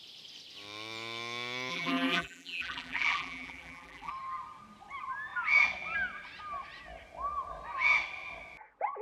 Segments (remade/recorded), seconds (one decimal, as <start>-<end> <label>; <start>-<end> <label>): 0.0-1.7 recorded; 1.7-4.1 remade; 4.1-9.0 recorded